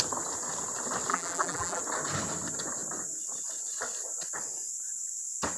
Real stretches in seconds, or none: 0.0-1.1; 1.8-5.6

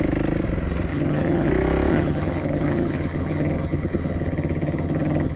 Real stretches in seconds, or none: 0.0-0.9; 1.5-1.9

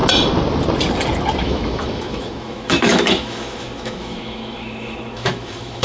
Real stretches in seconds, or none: 0.0-1.4